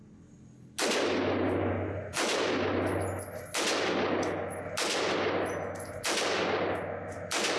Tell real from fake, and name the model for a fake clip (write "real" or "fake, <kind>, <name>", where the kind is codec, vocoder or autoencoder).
real